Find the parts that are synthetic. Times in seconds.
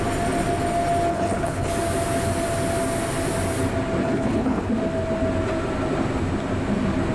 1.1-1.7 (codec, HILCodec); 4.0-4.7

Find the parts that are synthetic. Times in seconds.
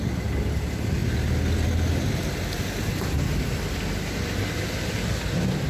none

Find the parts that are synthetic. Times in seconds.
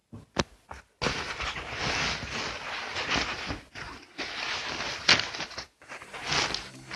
none